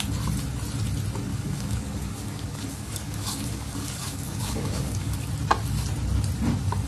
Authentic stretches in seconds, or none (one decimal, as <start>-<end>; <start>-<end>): 0.0-1.3; 5.3-6.9